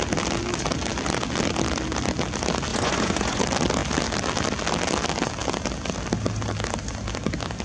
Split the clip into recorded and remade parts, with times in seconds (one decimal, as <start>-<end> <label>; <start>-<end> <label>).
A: 0.0-2.7 recorded; 2.7-3.4 remade; 3.4-7.6 recorded